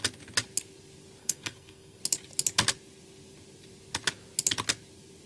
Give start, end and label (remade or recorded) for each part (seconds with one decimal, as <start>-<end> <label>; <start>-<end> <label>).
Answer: 0.0-1.2 recorded; 1.2-2.0 remade; 2.0-5.3 recorded